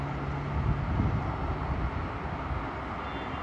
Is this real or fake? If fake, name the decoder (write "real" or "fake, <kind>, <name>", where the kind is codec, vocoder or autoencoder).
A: real